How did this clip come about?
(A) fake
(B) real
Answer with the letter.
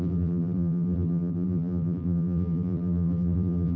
A